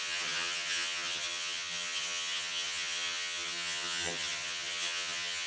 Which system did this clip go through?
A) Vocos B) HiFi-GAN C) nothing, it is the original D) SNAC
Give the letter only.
B